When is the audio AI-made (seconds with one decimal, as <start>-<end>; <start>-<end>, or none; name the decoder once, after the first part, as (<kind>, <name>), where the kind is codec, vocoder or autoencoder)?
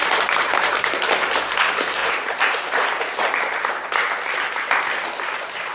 0.0-0.8 (vocoder, BigVGAN v2); 2.0-3.3